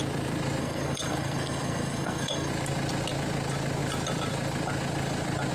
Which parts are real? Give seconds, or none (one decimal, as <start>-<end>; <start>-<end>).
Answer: 0.0-0.6; 2.5-5.5